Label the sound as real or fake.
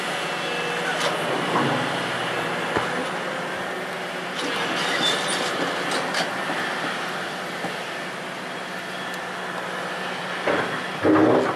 real